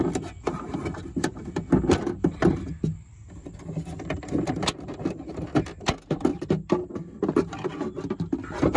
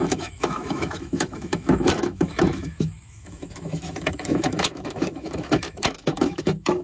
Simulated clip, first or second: second